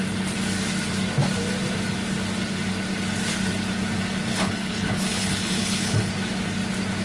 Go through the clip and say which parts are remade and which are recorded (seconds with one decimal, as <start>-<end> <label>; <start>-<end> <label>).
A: 0.0-4.3 recorded; 4.3-6.1 remade; 6.1-7.0 recorded

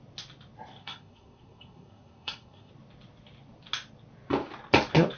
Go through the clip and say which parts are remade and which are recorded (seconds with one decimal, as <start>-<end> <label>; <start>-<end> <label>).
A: 0.0-0.8 recorded; 0.8-2.7 remade; 2.7-5.2 recorded